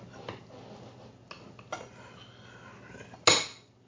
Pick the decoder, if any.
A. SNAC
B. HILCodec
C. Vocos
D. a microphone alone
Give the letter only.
D